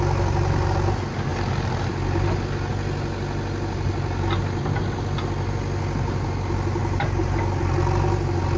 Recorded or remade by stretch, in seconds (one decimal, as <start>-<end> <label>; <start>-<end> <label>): 0.0-6.8 recorded; 6.8-7.4 remade; 7.4-8.6 recorded

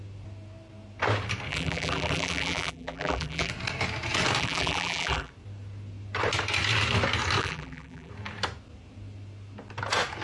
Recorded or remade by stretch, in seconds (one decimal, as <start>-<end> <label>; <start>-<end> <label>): 0.0-1.5 recorded; 1.5-3.5 remade; 3.5-4.4 recorded; 4.4-5.3 remade; 5.3-7.4 recorded; 7.4-8.1 remade; 8.1-10.2 recorded

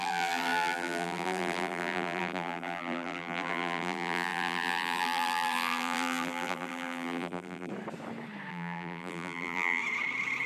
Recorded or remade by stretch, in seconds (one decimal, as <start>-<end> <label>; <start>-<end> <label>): 0.0-7.7 remade; 7.7-8.5 recorded; 8.5-9.8 remade; 9.8-10.5 recorded

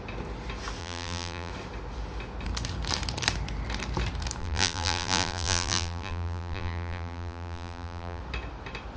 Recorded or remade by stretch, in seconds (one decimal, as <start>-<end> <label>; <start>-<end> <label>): 0.0-0.8 recorded; 0.8-1.5 remade; 1.5-4.4 recorded; 4.4-8.2 remade; 8.2-9.0 recorded